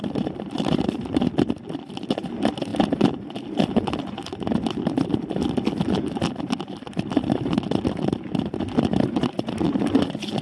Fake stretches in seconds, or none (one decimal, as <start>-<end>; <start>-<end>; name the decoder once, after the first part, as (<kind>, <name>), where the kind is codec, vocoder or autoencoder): none